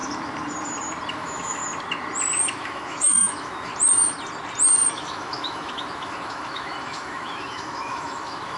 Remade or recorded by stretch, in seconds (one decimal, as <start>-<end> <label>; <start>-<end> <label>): 0.0-1.1 recorded; 1.1-1.6 remade; 1.6-2.5 recorded; 2.5-3.7 remade; 3.7-4.9 recorded; 4.9-8.6 remade